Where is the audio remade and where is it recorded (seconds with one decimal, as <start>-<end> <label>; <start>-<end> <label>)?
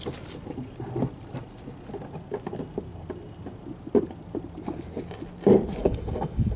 0.0-5.8 recorded; 5.8-6.6 remade